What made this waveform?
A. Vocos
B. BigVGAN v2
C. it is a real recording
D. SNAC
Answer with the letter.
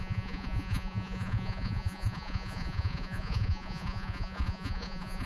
A